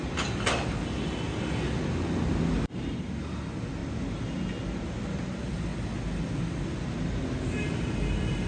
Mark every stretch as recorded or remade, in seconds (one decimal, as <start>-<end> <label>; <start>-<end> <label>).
0.0-8.5 recorded